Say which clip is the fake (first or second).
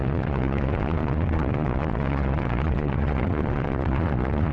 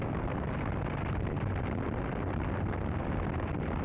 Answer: first